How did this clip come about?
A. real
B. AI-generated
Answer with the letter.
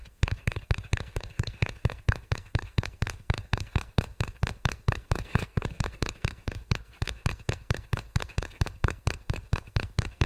B